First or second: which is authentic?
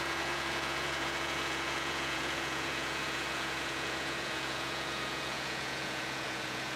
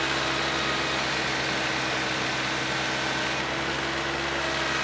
second